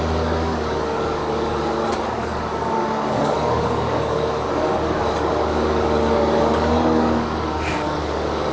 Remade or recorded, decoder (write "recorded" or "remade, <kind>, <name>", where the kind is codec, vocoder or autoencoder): remade, codec, DAC